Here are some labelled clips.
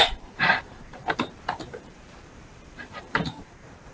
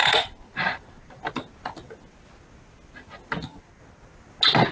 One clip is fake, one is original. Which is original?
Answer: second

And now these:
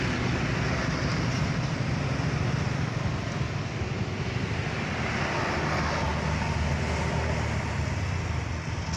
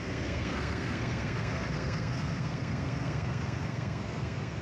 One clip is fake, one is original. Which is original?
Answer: first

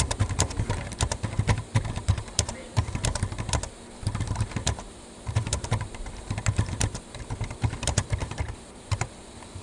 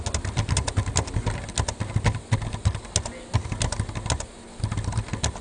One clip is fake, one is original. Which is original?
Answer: second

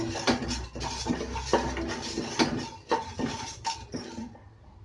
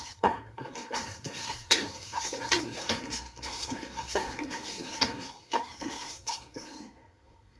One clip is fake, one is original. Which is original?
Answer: first